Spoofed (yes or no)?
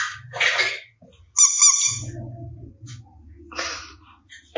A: no